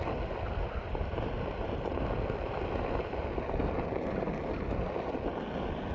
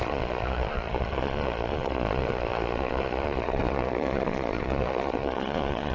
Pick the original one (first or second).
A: first